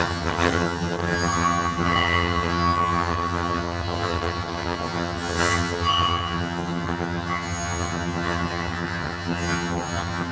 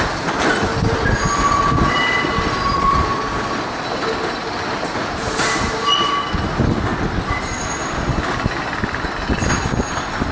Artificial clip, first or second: first